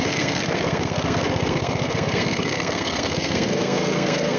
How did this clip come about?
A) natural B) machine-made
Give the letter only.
B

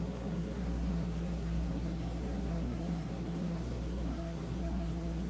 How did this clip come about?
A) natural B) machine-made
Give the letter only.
B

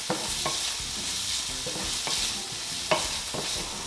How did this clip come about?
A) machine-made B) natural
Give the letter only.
B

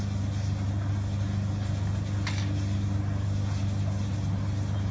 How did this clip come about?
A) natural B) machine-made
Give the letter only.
A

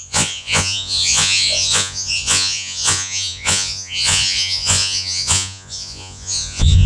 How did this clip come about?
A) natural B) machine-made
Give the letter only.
B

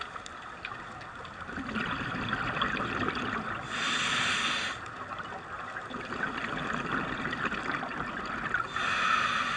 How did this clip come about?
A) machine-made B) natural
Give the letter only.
B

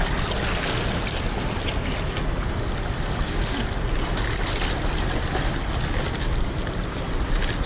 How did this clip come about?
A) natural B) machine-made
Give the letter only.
A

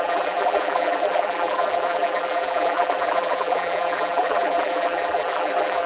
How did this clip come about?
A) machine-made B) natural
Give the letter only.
A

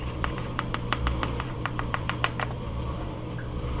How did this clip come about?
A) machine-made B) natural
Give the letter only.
A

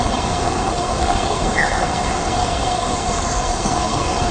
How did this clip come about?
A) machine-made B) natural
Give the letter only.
A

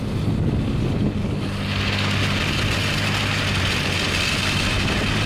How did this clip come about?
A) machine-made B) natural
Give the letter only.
B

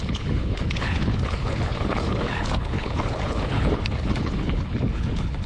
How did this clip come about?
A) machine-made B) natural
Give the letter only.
A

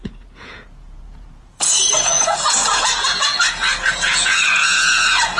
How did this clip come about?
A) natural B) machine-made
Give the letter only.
B